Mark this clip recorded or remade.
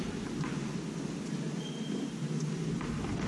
recorded